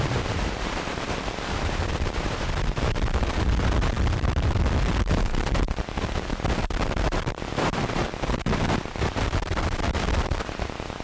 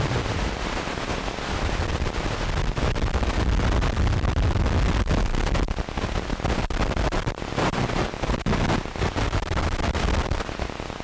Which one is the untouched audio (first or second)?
second